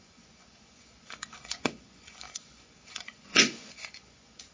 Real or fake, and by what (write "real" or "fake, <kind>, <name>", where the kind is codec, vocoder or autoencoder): fake, vocoder, Vocos